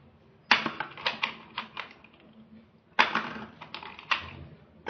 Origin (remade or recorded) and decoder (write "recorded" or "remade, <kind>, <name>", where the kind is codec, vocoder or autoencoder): recorded